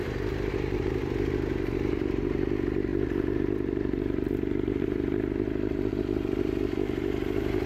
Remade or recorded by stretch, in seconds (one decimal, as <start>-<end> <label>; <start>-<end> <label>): 0.0-7.7 remade